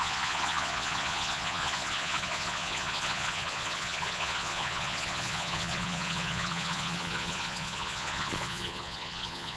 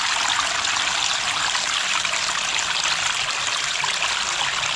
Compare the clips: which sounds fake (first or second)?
first